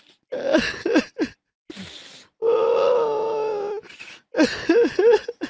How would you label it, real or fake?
real